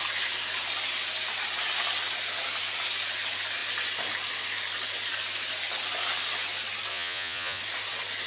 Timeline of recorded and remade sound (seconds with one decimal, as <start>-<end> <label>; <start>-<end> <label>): 0.0-6.9 recorded; 6.9-7.6 remade; 7.6-8.3 recorded